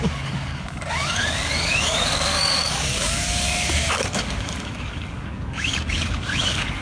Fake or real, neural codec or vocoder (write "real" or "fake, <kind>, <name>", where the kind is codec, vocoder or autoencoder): fake, codec, DAC